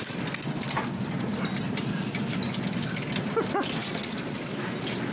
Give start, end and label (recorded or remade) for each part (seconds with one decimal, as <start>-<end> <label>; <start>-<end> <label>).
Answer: 0.0-5.1 recorded